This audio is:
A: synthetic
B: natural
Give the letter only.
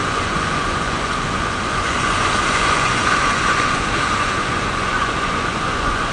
A